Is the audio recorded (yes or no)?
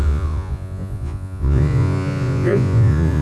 no